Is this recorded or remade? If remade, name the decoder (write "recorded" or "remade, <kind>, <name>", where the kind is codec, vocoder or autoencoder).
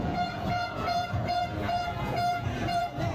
remade, vocoder, Vocos